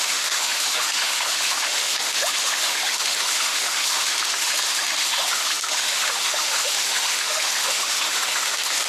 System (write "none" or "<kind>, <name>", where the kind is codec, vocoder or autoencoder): autoencoder, DAC-VAE